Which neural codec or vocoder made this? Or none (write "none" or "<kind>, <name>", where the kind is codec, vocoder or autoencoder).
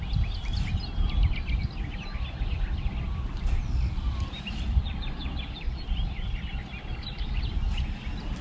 none